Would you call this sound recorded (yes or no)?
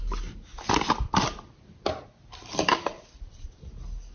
yes